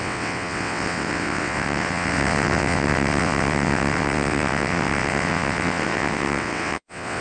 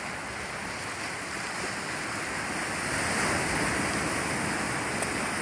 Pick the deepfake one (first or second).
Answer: first